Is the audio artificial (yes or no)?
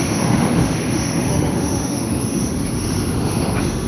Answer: yes